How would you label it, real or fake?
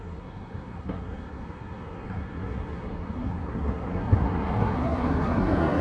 fake